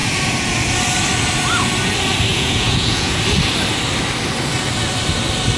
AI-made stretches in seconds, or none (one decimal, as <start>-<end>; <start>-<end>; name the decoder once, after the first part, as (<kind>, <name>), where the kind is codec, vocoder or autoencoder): 2.3-3.2 (vocoder, Vocos)